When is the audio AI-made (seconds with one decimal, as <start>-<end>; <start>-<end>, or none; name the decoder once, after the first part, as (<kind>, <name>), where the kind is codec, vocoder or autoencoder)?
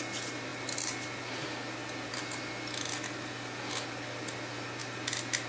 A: none